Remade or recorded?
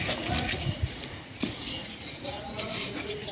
remade